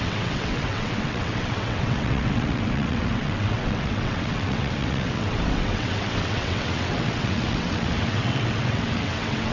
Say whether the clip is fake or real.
fake